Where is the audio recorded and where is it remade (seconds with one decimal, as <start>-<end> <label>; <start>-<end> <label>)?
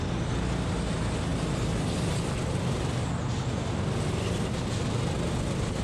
0.0-5.8 recorded